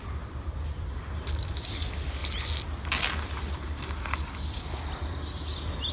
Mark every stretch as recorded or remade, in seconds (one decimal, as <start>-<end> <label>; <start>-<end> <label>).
0.0-2.2 remade; 2.2-5.9 recorded